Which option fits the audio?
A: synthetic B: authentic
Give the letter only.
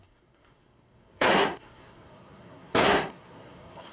A